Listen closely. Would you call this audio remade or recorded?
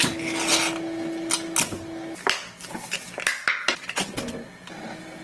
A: recorded